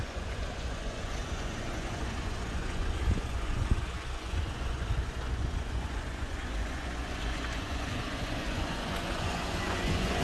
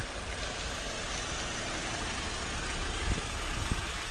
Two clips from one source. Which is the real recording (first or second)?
second